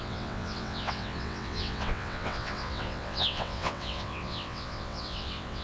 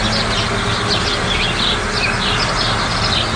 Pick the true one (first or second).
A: second